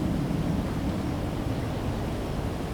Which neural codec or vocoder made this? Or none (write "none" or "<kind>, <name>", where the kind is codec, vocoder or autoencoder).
none